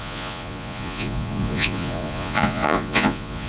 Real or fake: fake